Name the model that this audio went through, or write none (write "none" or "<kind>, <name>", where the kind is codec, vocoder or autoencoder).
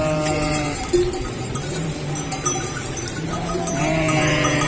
vocoder, BigVGAN v2